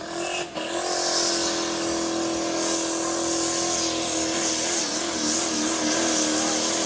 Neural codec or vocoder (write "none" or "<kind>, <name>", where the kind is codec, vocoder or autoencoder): none